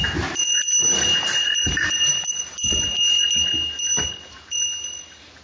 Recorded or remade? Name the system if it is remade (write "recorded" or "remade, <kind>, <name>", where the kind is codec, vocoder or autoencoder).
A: recorded